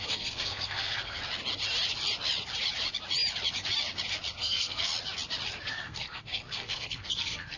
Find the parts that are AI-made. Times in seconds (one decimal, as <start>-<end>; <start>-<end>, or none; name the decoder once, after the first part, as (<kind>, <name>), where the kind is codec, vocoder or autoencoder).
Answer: 0.0-1.2 (codec, SNAC); 4.4-4.9; 5.7-7.6